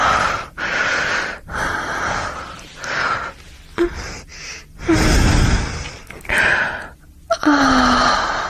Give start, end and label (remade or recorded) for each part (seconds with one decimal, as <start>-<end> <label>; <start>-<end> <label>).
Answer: 0.0-8.5 recorded